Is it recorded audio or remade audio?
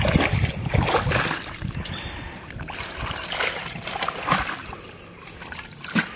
recorded